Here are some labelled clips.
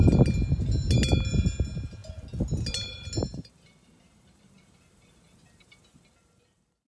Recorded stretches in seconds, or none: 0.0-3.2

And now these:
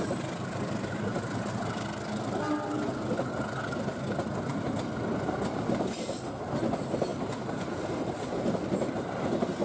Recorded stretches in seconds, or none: 0.0-3.9; 4.5-7.1; 8.5-9.6

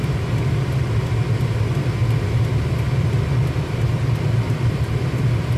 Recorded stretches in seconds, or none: 0.0-2.0